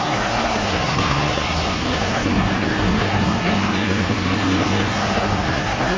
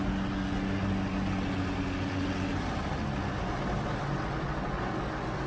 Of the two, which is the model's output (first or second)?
first